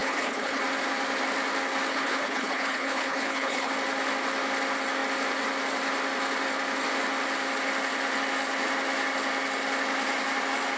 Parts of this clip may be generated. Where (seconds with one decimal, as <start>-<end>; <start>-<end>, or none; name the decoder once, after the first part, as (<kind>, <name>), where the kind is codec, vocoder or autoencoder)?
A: 0.0-0.6 (codec, HILCodec); 1.9-3.7